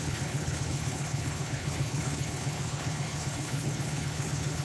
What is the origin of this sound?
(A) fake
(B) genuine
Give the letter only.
A